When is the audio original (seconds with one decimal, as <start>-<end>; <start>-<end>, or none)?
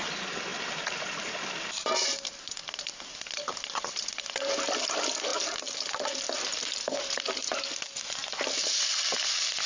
0.0-9.7